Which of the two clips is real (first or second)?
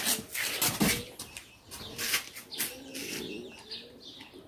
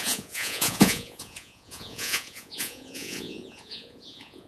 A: first